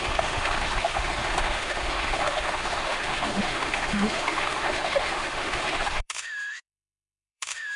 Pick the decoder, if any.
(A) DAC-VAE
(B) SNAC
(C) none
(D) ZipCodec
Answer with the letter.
A